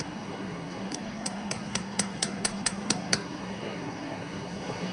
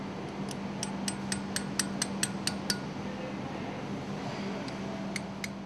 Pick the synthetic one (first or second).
first